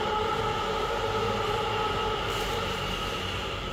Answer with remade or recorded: remade